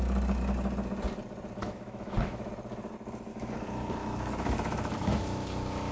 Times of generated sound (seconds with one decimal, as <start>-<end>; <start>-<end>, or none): 1.6-2.5; 3.3-5.9